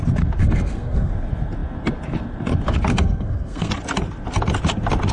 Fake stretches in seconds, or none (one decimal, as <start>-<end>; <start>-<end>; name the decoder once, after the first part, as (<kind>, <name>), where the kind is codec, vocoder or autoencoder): 0.4-1.1 (codec, SNAC); 2.9-3.7